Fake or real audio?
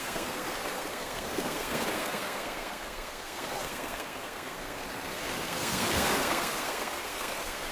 fake